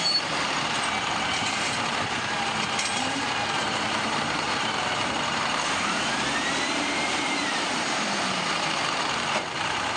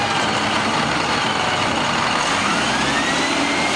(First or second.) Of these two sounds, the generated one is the first